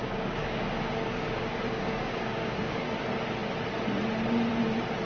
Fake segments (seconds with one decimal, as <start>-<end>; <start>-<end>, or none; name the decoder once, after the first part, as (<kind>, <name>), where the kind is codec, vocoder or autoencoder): 0.0-2.9 (codec, DAC)

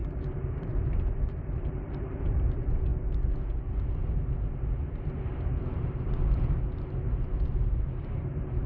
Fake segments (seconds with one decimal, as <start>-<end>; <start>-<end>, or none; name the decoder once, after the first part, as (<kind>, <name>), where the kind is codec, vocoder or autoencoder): 0.5-2.9 (vocoder, BigVGAN v2); 8.1-8.7

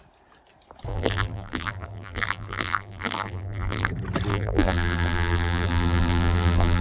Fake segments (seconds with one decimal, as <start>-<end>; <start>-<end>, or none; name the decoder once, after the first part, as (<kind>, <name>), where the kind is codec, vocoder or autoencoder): 0.9-3.9 (vocoder, BigVGAN v2); 4.3-6.8

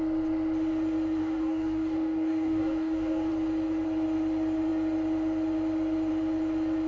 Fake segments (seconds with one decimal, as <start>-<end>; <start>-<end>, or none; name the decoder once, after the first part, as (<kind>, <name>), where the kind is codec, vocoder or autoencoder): 1.2-3.3 (codec, DAC)